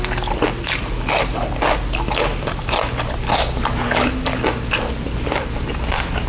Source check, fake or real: real